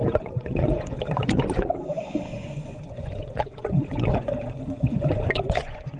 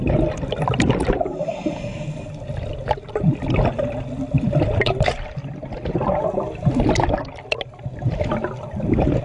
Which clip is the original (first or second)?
second